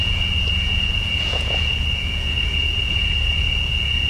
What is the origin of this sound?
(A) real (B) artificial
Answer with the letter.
B